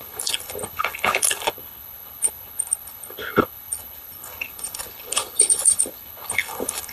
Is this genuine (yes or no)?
no